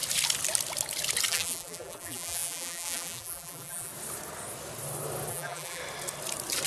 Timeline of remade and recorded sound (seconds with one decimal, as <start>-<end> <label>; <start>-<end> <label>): 0.0-1.3 recorded; 1.3-3.9 remade; 3.9-5.3 recorded; 5.3-5.8 remade; 5.8-6.7 recorded

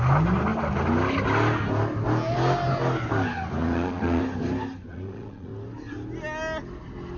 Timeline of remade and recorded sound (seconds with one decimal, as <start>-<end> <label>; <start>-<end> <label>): 0.0-3.6 recorded; 3.6-4.2 remade; 4.2-4.9 recorded; 4.9-5.5 remade; 5.5-7.2 recorded

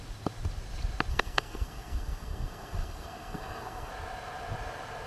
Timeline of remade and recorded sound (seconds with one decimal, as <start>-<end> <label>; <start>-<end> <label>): 0.0-1.1 recorded; 1.1-3.9 remade; 3.9-5.1 recorded

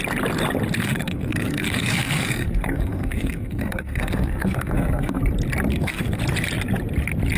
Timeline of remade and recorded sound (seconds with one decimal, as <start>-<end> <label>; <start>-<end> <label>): 0.0-0.8 recorded; 0.8-5.2 remade; 5.2-5.7 recorded; 5.7-6.2 remade; 6.2-7.4 recorded

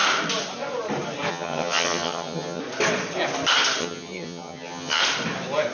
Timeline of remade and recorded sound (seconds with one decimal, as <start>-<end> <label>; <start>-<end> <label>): 0.0-1.3 recorded; 1.3-2.6 remade; 2.6-3.8 recorded; 3.8-5.0 remade; 5.0-5.7 recorded

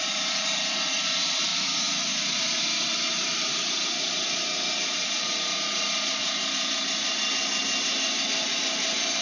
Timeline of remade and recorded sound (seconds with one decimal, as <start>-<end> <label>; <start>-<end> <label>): 0.0-1.5 recorded; 1.5-2.4 remade; 2.4-9.2 recorded

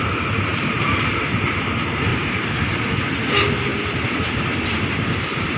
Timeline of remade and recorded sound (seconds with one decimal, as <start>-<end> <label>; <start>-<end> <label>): 0.0-0.5 recorded; 0.5-1.5 remade; 1.5-2.1 recorded; 2.1-3.0 remade; 3.0-3.7 recorded; 3.7-5.6 remade

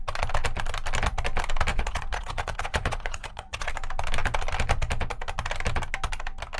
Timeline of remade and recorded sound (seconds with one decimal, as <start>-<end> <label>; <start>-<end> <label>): 0.0-1.7 recorded; 1.7-3.7 remade; 3.7-6.6 recorded